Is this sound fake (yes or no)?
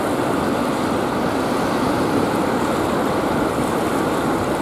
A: yes